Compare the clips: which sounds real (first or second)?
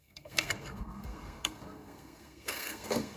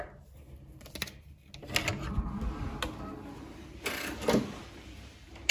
second